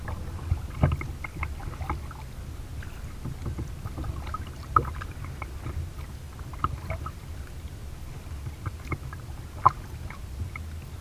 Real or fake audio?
real